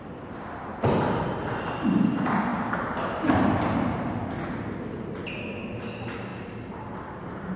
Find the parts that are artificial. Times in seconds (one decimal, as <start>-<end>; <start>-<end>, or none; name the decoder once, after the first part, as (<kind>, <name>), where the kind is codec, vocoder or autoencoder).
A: none